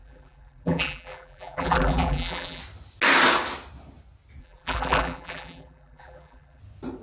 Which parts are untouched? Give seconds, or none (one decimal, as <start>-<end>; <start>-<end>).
2.6-4.4; 6.6-7.0